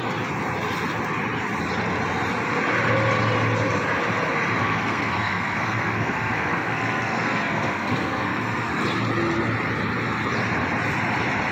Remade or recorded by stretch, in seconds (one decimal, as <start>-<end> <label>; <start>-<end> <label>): 0.0-4.6 recorded; 4.6-8.7 remade; 8.7-11.5 recorded